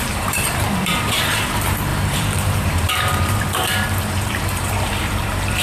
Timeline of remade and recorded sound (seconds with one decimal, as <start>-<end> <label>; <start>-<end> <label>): 0.0-5.6 remade